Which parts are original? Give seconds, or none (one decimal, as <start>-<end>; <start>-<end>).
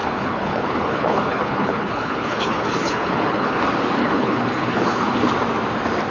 3.6-4.0; 5.2-6.1